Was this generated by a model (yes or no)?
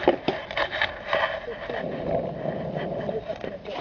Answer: yes